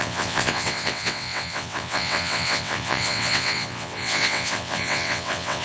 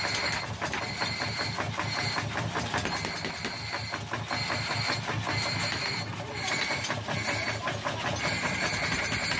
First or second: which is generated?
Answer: first